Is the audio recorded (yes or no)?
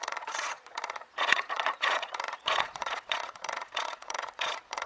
no